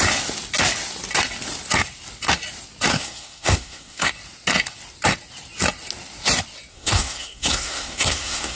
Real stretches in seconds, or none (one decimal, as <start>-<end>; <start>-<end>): 0.0-2.9; 4.1-6.7